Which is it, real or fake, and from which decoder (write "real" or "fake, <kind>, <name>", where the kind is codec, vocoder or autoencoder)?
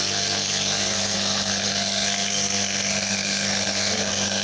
fake, codec, SNAC